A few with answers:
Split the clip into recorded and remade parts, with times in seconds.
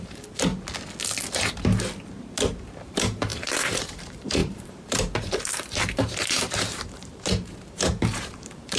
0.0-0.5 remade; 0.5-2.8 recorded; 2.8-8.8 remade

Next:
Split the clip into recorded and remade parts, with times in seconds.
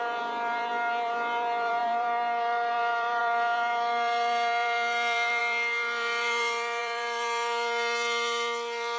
0.0-9.0 remade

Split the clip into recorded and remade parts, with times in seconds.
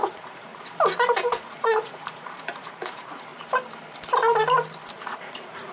0.0-0.5 remade; 0.5-1.4 recorded; 1.4-3.3 remade; 3.3-4.9 recorded; 4.9-5.7 remade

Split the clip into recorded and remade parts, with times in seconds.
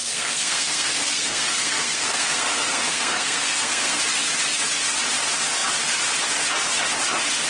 0.0-4.0 remade; 4.0-7.5 recorded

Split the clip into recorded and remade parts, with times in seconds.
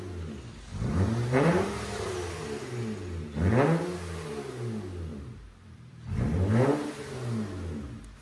0.0-0.7 recorded; 0.7-2.1 remade; 2.1-5.1 recorded; 5.1-6.9 remade; 6.9-8.2 recorded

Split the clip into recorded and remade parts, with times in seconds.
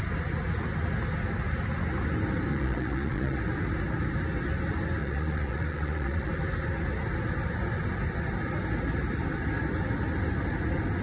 0.0-2.5 recorded; 2.5-3.4 remade; 3.4-5.0 recorded; 5.0-6.3 remade; 6.3-11.0 recorded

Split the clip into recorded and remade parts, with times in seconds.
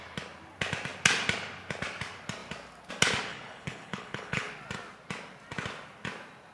0.0-3.3 recorded; 3.3-4.5 remade; 4.5-6.5 recorded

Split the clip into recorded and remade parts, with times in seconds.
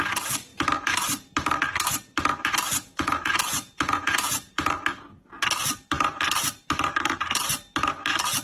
0.0-2.7 recorded; 2.7-4.7 remade; 4.7-8.4 recorded